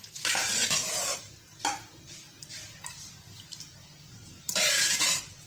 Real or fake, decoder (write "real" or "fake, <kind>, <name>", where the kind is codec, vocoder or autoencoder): fake, vocoder, BigVGAN v2